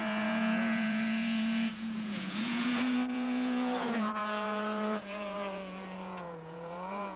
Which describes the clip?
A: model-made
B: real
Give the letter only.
A